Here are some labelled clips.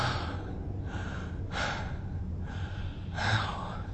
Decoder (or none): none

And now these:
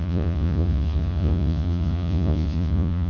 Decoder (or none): vocoder, Vocos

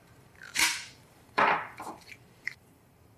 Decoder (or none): vocoder, BigVGAN v2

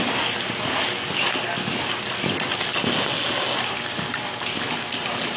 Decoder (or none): none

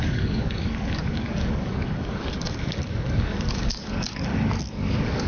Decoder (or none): codec, DAC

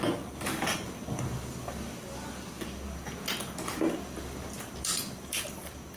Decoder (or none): vocoder, BigVGAN v2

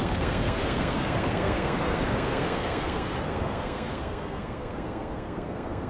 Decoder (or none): codec, SNAC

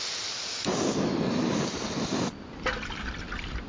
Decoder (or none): none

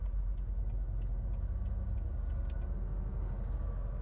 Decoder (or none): none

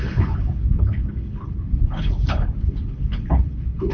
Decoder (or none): codec, HILCodec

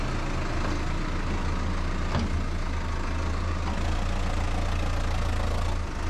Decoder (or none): none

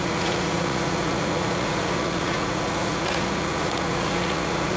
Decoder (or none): vocoder, Vocos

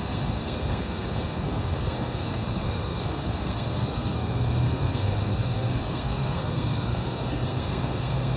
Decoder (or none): codec, SNAC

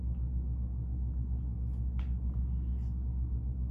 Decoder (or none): none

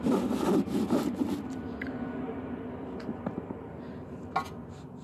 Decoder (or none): none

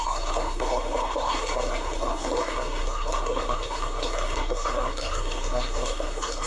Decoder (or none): codec, SNAC